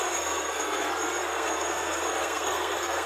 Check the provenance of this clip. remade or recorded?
remade